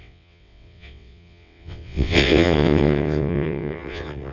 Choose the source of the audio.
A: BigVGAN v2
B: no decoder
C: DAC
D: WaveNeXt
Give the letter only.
D